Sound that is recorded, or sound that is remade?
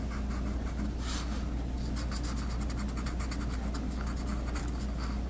recorded